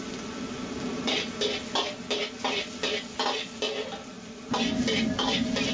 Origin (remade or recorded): recorded